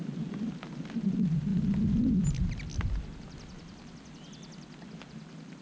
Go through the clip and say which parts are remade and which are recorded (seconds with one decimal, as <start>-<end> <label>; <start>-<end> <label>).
0.0-5.6 recorded